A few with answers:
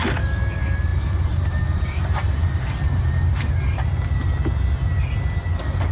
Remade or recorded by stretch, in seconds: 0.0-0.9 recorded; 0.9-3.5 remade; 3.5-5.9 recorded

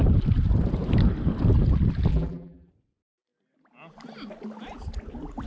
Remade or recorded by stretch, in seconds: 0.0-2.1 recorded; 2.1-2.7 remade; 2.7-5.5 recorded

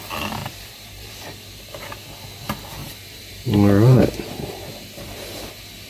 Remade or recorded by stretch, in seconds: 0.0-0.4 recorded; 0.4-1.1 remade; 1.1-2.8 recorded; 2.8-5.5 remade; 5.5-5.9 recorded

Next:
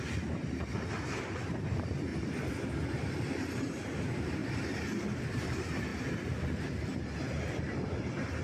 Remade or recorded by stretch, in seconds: 0.0-2.1 remade; 2.1-2.9 recorded; 2.9-4.4 remade; 4.4-5.3 recorded; 5.3-5.9 remade; 5.9-7.6 recorded; 7.6-8.4 remade